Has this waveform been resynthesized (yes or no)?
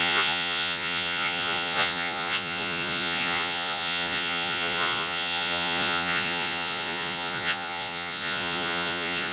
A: yes